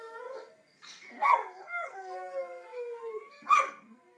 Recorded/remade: remade